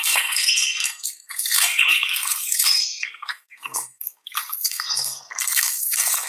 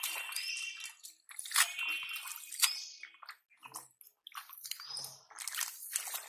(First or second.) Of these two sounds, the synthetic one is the first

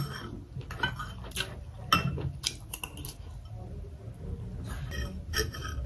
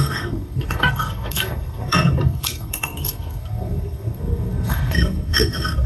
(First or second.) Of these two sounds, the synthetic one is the second